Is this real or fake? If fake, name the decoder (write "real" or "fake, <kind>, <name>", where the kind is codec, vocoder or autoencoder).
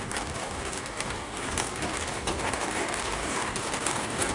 fake, codec, DAC